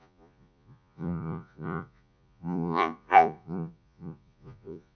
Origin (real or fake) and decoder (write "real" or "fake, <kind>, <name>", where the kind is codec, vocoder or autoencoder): fake, vocoder, Vocos